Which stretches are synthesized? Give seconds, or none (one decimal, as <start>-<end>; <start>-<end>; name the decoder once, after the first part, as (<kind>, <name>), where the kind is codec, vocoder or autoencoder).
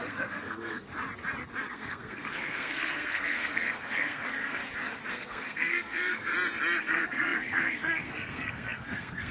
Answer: 0.0-0.9 (codec, SNAC); 1.7-4.6; 5.1-6.3; 6.8-9.3